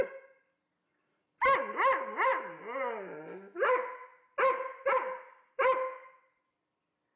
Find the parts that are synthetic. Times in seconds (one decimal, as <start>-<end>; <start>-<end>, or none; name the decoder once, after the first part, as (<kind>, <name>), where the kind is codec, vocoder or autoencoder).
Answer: none